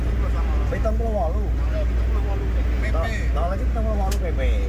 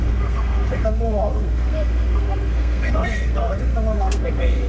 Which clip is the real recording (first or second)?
first